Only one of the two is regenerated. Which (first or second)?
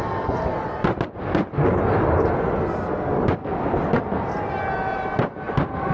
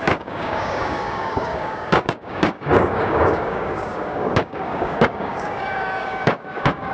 second